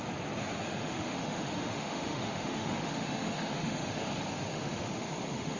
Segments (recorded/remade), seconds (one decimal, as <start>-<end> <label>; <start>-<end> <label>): 0.0-0.6 recorded; 0.6-4.0 remade; 4.0-4.5 recorded; 4.5-5.6 remade